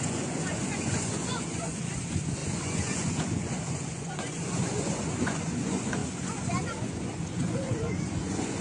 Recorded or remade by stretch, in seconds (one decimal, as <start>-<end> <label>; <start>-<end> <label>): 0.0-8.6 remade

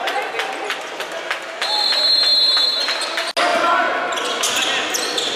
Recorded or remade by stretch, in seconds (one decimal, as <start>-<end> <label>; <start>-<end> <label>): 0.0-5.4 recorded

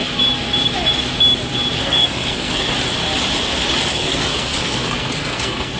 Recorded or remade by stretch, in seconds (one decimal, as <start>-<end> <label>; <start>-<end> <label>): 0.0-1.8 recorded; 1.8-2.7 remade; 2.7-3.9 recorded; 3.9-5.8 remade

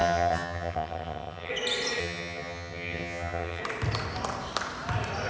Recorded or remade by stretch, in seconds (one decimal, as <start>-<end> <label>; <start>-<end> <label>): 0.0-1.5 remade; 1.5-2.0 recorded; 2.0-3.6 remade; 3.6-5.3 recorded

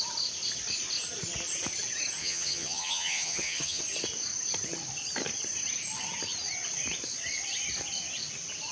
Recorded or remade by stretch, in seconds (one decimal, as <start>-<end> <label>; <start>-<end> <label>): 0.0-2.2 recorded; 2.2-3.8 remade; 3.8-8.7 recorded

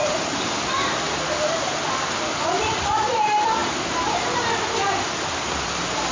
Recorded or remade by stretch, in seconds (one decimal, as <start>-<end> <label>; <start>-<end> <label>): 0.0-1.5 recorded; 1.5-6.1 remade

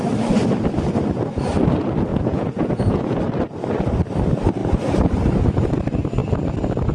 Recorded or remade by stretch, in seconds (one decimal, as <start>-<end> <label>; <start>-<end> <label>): 0.0-2.1 recorded; 2.1-3.2 remade; 3.2-6.9 recorded

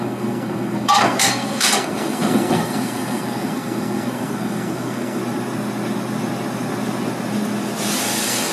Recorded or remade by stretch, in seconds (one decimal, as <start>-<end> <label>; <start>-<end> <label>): 0.0-5.2 remade; 5.2-8.0 recorded; 8.0-8.5 remade